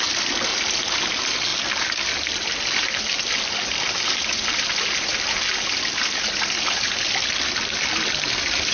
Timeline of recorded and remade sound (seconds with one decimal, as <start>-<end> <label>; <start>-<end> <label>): 0.0-8.7 recorded